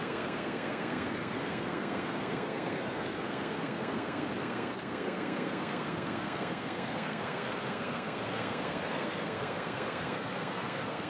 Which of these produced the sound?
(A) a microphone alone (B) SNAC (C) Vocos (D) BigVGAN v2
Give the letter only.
B